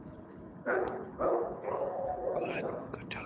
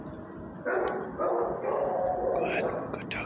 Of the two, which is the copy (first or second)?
first